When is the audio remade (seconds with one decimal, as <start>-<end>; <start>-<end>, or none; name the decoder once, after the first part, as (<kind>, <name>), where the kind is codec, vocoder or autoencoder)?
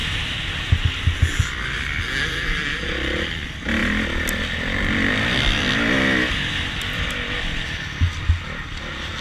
none